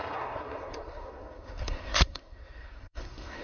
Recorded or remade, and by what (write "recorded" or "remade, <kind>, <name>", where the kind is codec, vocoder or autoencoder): remade, codec, SNAC